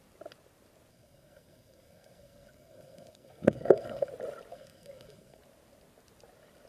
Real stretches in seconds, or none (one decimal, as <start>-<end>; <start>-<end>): 0.0-0.9; 4.1-4.5; 5.4-6.7